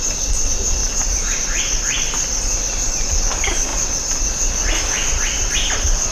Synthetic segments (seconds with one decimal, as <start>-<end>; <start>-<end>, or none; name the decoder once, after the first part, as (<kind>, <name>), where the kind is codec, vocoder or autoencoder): 0.8-1.4 (vocoder, BigVGAN v2)